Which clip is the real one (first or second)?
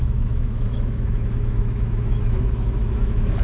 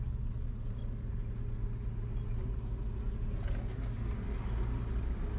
second